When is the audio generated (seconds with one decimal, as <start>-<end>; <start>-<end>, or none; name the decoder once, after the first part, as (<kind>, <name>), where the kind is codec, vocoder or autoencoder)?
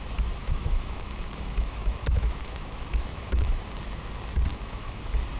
0.4-3.6 (autoencoder, DAC-VAE); 4.5-5.0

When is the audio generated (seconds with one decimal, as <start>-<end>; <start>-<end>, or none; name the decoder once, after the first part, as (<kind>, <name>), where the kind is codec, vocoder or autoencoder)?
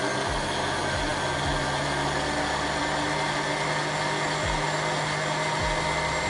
none